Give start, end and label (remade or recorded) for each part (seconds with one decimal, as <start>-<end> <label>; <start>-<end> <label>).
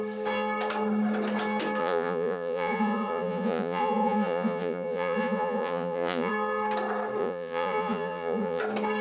0.0-1.8 recorded; 1.8-6.3 remade; 6.3-7.2 recorded; 7.2-8.6 remade; 8.6-9.0 recorded